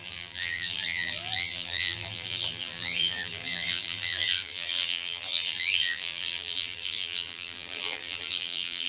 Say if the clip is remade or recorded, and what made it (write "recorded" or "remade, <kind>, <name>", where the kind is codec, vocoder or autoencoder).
remade, vocoder, BigVGAN v2